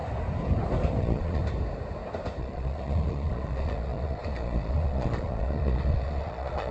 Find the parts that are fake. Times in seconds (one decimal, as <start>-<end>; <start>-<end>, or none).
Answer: 1.0-1.4; 2.4-6.7